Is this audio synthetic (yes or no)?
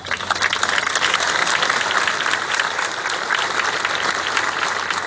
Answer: no